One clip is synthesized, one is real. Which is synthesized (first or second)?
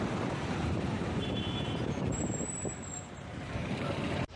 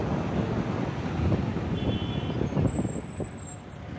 first